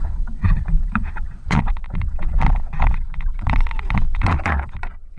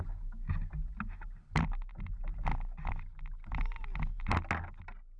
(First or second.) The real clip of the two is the second